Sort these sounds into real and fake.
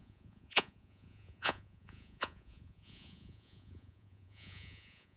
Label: fake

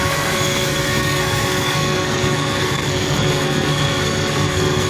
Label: fake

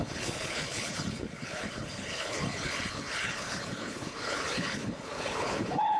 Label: fake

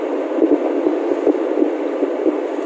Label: real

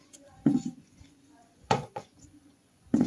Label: fake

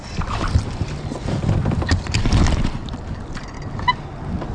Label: real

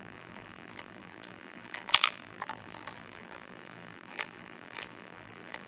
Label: fake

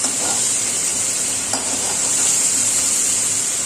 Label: fake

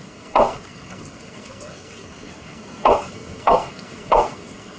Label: fake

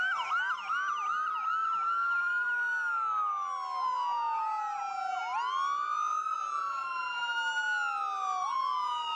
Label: real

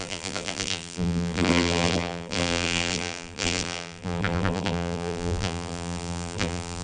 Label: fake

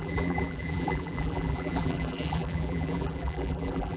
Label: fake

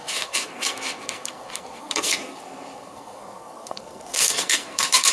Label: fake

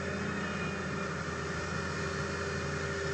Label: real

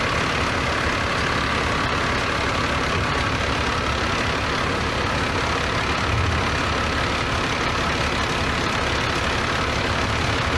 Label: real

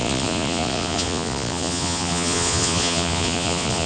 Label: fake